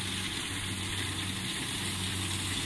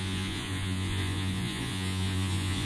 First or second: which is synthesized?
second